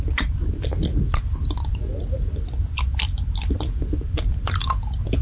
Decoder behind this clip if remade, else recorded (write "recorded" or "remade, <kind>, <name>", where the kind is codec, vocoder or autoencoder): recorded